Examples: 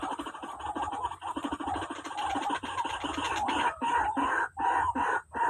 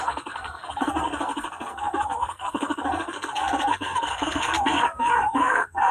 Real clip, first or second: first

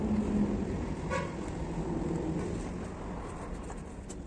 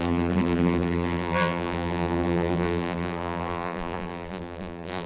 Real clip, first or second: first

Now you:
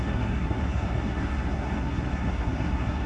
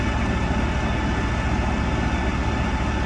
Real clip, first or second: second